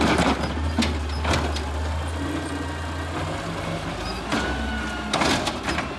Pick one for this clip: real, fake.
real